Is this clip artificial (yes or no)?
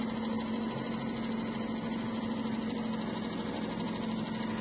no